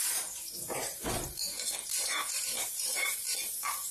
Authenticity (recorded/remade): remade